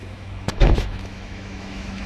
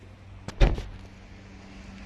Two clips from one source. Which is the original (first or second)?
second